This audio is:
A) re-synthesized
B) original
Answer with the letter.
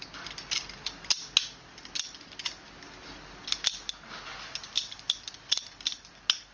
B